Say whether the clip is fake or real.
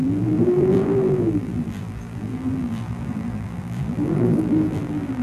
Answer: fake